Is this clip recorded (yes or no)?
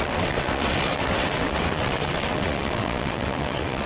no